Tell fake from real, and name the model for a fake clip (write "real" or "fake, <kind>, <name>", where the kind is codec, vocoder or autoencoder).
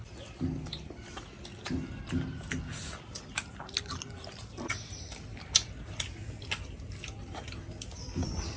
real